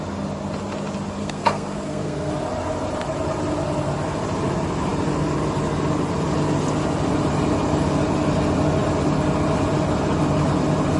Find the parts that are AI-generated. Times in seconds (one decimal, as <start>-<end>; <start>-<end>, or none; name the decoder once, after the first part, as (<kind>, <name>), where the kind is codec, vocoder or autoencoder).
1.2-2.3 (codec, SNAC)